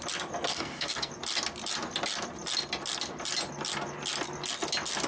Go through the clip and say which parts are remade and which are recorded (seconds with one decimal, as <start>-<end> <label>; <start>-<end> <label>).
0.0-0.5 recorded; 0.5-1.1 remade; 1.1-5.1 recorded